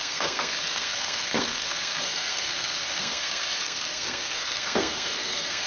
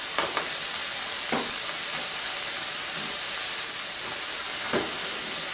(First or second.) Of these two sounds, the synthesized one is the first